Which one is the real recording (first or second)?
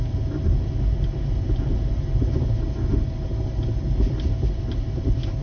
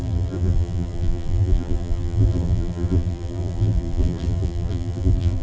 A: first